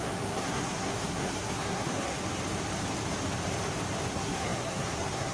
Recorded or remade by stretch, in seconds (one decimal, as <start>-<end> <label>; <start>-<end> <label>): 0.0-2.2 remade; 2.2-4.1 recorded; 4.1-5.3 remade